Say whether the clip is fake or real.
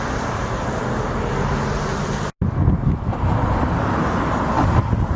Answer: real